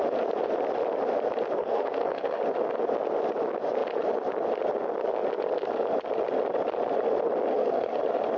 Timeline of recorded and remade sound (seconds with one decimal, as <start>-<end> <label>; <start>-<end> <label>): 0.0-1.6 recorded; 1.6-2.4 remade; 2.4-7.5 recorded; 7.5-8.0 remade; 8.0-8.4 recorded